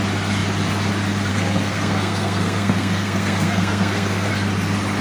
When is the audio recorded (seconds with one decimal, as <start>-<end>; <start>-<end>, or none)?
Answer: 0.0-1.3; 4.3-5.0